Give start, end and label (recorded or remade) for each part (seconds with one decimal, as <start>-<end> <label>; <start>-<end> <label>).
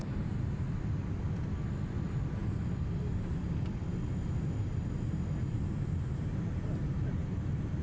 0.0-7.8 recorded